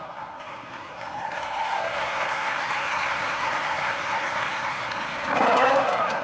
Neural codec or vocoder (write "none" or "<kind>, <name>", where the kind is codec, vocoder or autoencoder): codec, SNAC